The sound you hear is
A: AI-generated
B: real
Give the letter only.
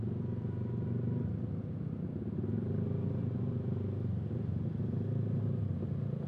B